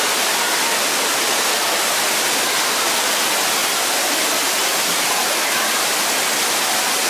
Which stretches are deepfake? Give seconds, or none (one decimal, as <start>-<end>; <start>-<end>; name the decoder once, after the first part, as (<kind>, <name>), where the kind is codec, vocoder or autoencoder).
none